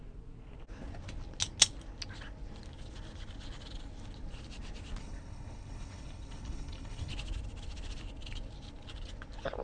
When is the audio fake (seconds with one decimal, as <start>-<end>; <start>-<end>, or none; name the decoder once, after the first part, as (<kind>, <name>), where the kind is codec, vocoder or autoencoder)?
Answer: 5.0-7.1 (codec, HILCodec)